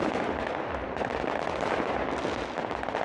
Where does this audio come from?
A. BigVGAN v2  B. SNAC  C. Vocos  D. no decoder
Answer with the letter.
D